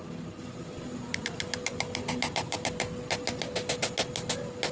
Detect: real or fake real